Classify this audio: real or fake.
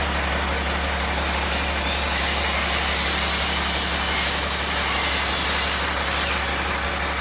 real